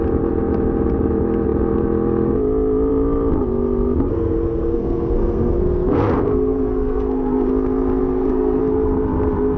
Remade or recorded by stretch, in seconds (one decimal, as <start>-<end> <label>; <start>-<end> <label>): 0.0-4.1 recorded; 4.1-7.5 remade; 7.5-8.0 recorded; 8.0-8.6 remade; 8.6-9.6 recorded

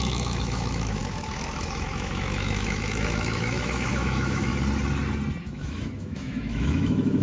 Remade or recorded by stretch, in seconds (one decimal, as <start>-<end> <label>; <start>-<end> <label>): 0.0-4.5 remade; 4.5-5.4 recorded; 5.4-7.2 remade

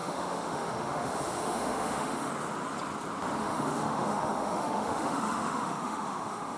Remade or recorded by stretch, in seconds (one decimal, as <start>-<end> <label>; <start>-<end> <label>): 0.0-2.3 remade; 2.3-3.4 recorded; 3.4-6.6 remade

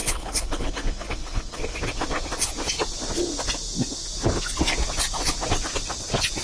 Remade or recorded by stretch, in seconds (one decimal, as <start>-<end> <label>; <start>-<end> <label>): 0.0-1.6 remade; 1.6-6.4 recorded

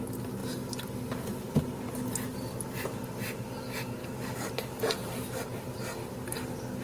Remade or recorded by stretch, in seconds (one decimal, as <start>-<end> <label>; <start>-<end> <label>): 0.0-4.0 recorded; 4.0-4.5 remade; 4.5-6.8 recorded

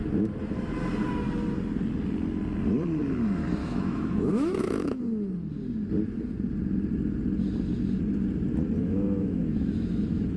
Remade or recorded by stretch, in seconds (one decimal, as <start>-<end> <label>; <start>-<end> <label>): 0.0-3.6 recorded; 3.6-5.0 remade; 5.0-8.8 recorded; 8.8-10.0 remade; 10.0-10.4 recorded

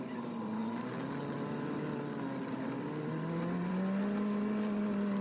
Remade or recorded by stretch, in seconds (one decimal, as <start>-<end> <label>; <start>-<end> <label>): 0.0-5.2 recorded

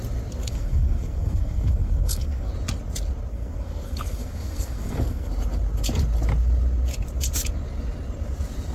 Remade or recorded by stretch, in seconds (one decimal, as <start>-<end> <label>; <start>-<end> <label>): 0.0-0.4 recorded; 0.4-2.5 remade; 2.5-3.3 recorded; 3.3-5.3 remade; 5.3-8.7 recorded